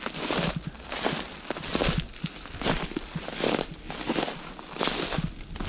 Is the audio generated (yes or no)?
no